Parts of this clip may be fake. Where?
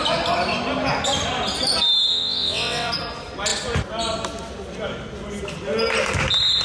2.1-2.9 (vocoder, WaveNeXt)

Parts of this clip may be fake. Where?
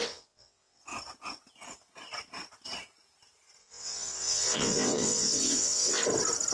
0.0-0.8 (vocoder, WaveNeXt); 3.6-6.0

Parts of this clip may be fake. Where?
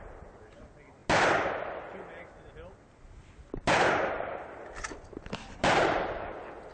none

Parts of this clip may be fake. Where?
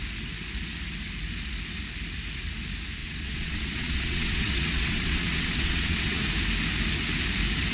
3.0-6.2 (vocoder, WaveNeXt)